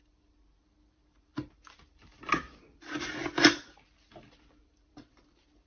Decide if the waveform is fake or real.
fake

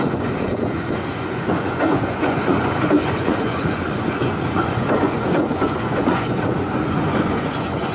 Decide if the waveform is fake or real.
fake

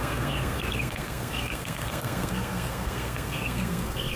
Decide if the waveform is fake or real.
fake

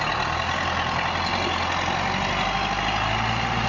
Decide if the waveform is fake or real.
real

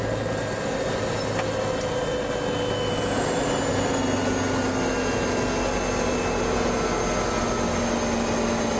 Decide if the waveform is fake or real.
real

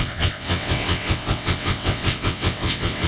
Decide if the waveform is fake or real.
fake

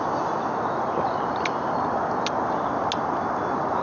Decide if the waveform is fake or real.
real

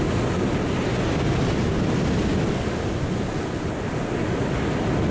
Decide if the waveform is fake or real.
real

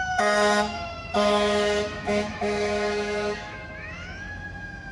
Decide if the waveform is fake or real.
fake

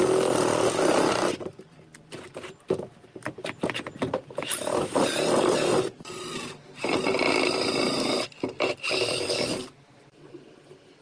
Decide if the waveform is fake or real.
fake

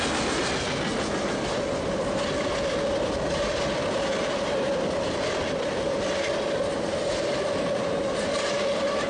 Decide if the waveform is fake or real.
real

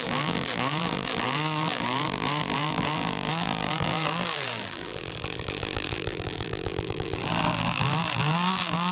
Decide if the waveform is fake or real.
fake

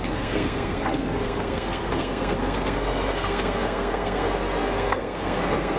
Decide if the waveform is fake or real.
fake